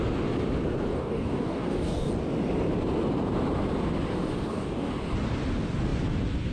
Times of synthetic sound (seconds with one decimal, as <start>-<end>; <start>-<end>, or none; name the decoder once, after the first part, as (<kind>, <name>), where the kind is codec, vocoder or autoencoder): 0.9-2.1 (codec, DAC); 4.1-4.9